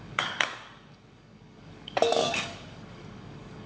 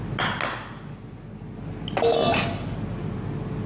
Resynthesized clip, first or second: first